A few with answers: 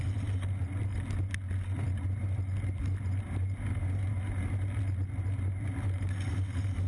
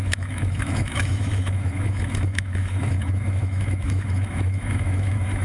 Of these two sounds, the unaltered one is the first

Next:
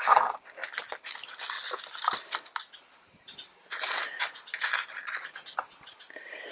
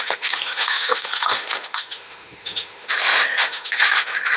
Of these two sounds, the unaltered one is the first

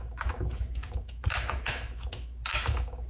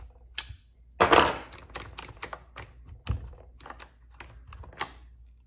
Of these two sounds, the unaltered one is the second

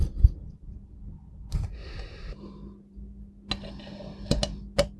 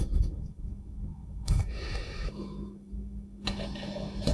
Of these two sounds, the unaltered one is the first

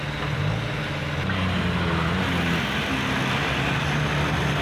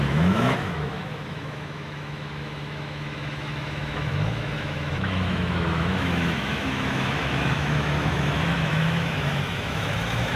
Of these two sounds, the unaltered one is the first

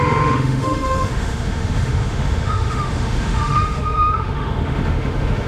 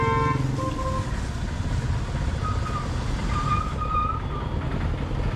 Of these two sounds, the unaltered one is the second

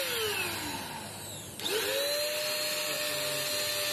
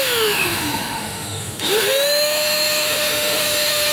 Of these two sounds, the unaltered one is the first